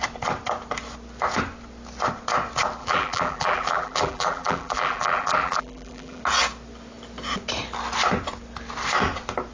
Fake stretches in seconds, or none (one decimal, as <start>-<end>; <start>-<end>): 2.8-6.2